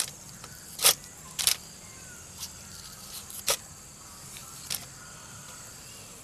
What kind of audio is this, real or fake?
fake